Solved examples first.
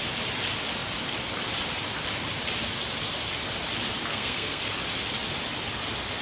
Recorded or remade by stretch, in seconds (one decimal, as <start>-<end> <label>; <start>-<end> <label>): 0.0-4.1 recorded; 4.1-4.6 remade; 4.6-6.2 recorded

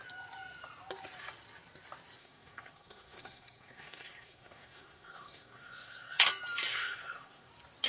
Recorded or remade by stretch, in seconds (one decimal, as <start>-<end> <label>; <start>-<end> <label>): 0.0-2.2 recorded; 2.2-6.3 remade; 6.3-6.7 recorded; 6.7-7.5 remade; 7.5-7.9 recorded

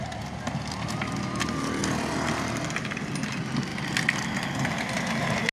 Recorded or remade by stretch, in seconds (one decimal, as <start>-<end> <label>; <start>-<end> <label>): 0.0-5.5 recorded